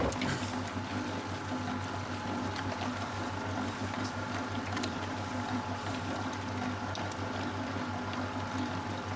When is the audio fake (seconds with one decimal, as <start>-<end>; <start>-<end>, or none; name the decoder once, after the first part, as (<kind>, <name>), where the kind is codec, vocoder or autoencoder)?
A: 3.8-6.5 (vocoder, BigVGAN v2)

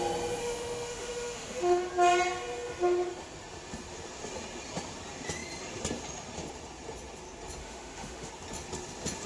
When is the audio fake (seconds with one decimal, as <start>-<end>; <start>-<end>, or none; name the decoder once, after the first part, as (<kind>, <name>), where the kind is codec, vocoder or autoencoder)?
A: 0.4-1.8 (autoencoder, DAC-VAE); 7.6-8.3

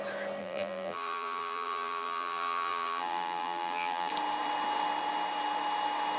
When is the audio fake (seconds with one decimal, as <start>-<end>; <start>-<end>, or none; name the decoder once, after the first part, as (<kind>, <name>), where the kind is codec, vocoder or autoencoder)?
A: 0.4-4.1 (vocoder, BigVGAN v2)

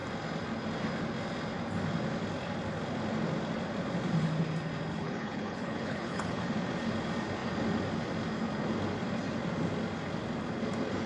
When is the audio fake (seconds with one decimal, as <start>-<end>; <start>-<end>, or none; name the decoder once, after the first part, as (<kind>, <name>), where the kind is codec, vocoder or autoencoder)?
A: 4.9-6.4 (codec, HILCodec)